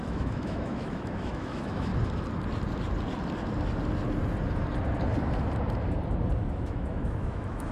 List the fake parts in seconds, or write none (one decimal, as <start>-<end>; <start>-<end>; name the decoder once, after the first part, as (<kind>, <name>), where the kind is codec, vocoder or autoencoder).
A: 0.0-1.9 (autoencoder, DAC-VAE); 6.5-7.7